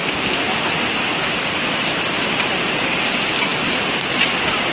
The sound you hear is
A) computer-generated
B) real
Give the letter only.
B